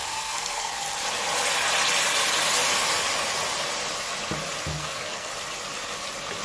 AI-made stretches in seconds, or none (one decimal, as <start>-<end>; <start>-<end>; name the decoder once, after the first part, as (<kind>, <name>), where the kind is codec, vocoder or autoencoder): 0.0-0.7 (codec, SNAC); 4.7-5.3